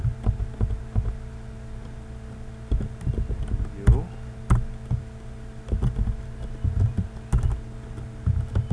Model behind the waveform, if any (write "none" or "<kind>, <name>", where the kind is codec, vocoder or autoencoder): none